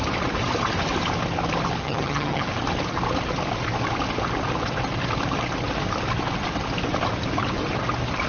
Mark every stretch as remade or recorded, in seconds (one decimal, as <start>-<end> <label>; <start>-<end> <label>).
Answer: 0.0-1.8 recorded; 1.8-2.5 remade; 2.5-8.3 recorded